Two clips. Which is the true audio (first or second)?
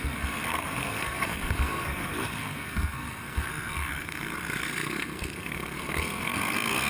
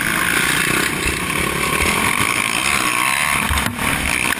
second